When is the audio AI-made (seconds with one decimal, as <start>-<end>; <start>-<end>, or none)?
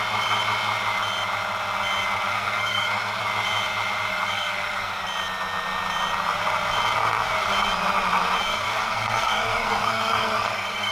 2.3-3.2; 4.1-5.0; 8.5-10.9